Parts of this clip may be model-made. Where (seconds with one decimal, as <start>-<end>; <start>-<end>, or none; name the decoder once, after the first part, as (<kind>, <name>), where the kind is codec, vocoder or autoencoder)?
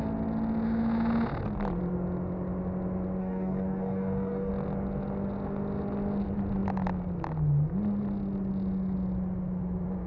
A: 3.2-4.5 (codec, DAC)